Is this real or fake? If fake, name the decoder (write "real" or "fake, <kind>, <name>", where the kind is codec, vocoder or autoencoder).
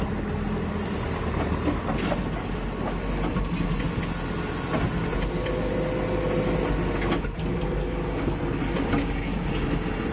real